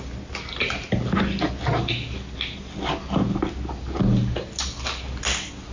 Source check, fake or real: real